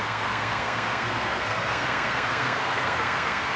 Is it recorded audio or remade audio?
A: remade